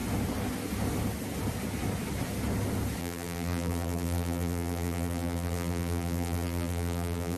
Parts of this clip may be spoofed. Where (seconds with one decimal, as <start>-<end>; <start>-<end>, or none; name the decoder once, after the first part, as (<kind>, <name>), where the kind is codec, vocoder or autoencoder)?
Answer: 3.0-7.4 (vocoder, BigVGAN v2)